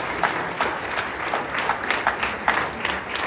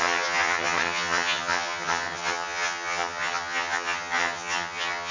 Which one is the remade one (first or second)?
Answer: second